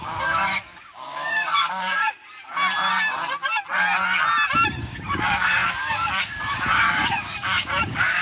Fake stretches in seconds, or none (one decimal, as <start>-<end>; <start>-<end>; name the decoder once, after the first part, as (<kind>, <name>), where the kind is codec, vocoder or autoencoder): 0.0-2.0 (codec, DAC); 4.8-8.2